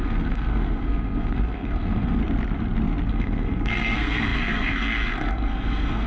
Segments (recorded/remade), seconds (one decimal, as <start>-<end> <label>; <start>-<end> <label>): 0.0-2.2 remade; 2.2-3.1 recorded; 3.1-6.1 remade